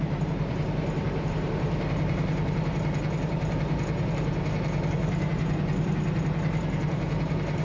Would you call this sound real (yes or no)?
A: no